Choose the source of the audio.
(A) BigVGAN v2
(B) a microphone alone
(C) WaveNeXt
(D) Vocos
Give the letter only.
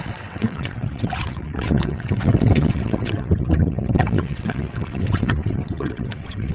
C